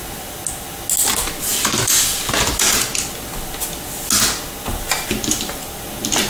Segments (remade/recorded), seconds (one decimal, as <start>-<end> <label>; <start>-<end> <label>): 0.0-4.7 recorded; 4.7-5.6 remade; 5.6-6.3 recorded

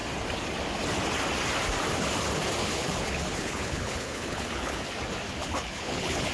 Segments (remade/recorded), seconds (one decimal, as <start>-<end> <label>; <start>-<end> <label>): 0.0-2.6 recorded; 2.6-4.8 remade; 4.8-5.4 recorded; 5.4-6.3 remade

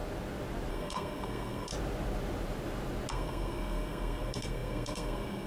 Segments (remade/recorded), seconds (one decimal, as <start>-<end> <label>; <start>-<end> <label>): 0.0-0.7 recorded; 0.7-1.7 remade; 1.7-3.1 recorded; 3.1-5.5 remade